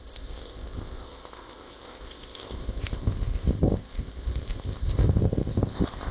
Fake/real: fake